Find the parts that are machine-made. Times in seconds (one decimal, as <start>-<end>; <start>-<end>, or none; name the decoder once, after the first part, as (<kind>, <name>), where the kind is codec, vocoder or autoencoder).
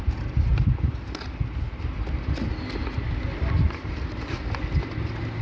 none